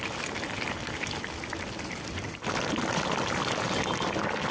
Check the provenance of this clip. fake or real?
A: real